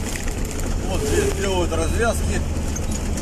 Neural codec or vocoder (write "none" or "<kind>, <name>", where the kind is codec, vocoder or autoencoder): none